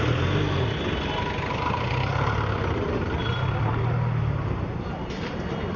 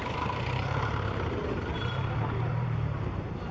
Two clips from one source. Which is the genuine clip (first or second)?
first